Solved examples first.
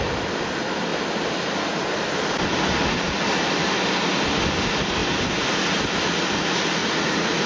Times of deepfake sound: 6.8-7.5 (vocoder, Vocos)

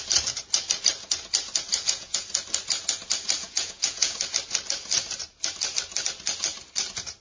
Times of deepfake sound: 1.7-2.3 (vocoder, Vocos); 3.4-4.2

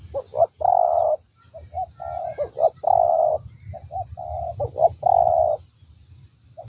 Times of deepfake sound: none

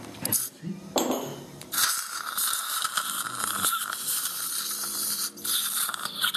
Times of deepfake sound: 1.3-2.9 (vocoder, BigVGAN v2)

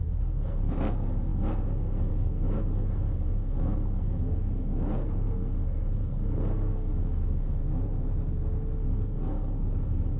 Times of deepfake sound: 0.0-7.6 (codec, SNAC); 8.8-10.2

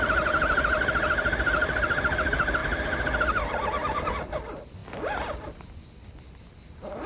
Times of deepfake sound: none

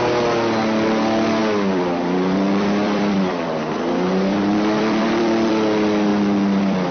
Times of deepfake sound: 1.4-5.5 (vocoder, BigVGAN v2); 6.1-6.9

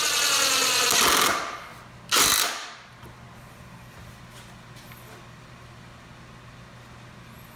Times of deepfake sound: none